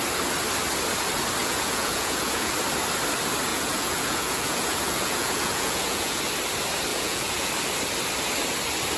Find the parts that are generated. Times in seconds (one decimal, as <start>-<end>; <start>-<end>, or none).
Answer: 1.4-2.5; 3.5-6.2; 6.9-7.5